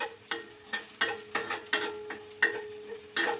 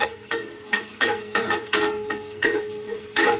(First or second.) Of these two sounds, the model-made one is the second